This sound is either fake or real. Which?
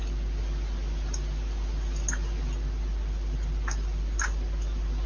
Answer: real